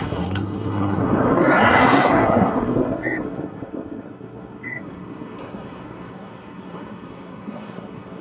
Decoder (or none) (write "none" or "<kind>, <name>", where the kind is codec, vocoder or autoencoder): codec, SNAC